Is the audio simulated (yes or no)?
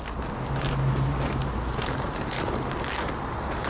no